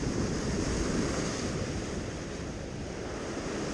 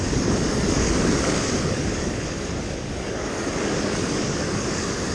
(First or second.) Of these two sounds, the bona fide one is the first